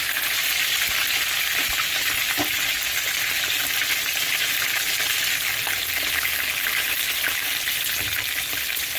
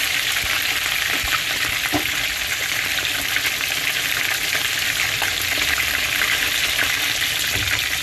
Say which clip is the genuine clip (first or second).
first